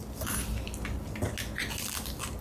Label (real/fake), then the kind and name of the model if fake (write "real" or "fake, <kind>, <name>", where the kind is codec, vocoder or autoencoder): real